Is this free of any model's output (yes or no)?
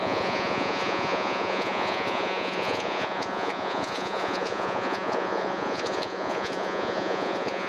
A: no